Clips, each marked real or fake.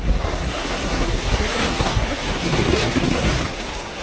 fake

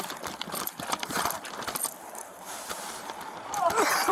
fake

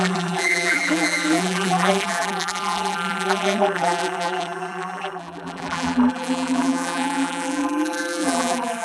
fake